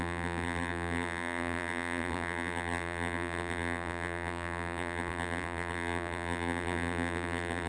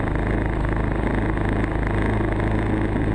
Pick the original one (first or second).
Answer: second